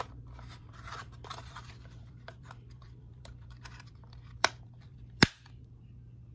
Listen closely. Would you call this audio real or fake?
fake